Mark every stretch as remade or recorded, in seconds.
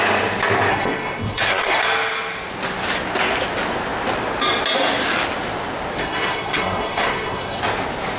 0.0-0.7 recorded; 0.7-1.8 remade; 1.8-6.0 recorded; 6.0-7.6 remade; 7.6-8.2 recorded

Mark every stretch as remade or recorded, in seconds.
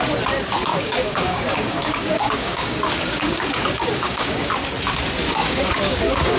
0.0-0.7 recorded; 0.7-4.5 remade; 4.5-5.4 recorded; 5.4-6.4 remade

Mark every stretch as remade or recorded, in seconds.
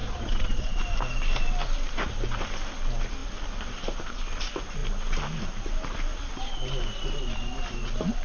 0.0-0.8 remade; 0.8-8.2 recorded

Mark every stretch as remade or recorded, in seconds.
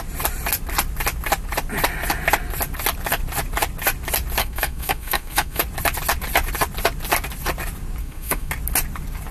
0.0-4.4 recorded; 4.4-5.6 remade; 5.6-8.0 recorded; 8.0-8.5 remade; 8.5-9.3 recorded